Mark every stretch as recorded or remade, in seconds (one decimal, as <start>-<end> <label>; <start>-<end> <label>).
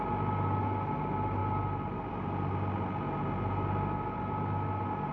0.0-5.1 recorded